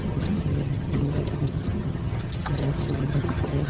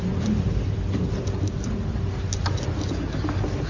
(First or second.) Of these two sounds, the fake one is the first